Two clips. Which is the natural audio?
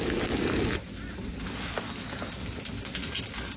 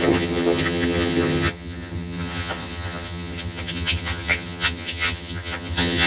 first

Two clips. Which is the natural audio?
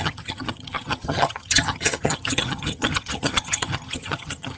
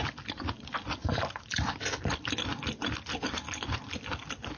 second